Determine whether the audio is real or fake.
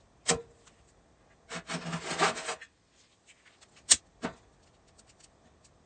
real